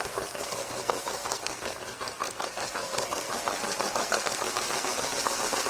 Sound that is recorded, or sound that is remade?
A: remade